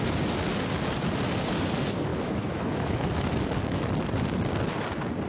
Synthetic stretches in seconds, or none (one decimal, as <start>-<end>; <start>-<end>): 2.1-3.4